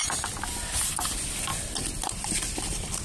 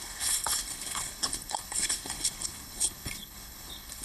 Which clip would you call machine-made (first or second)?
second